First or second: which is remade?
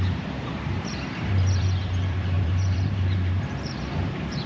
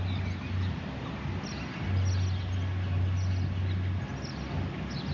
first